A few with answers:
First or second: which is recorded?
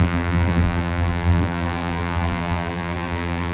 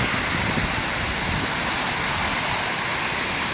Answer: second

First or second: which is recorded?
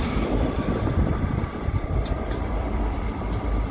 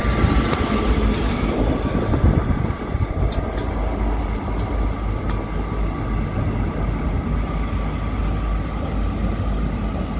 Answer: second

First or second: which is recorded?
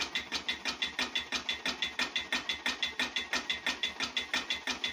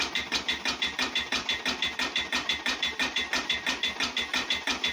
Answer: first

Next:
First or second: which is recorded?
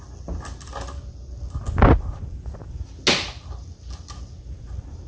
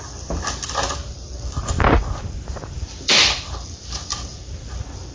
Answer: first